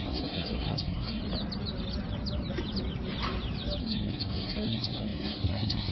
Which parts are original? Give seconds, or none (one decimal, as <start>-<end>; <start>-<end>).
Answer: 1.2-3.8